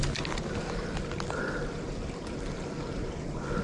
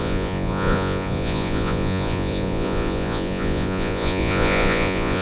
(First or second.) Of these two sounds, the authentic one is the first